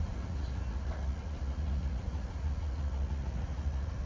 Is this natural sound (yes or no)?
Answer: no